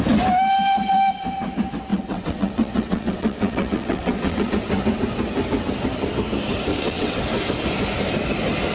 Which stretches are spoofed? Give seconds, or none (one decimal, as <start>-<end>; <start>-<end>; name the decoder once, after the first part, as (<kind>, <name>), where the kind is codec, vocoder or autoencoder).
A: 1.9-4.5 (vocoder, WaveNeXt); 6.7-7.2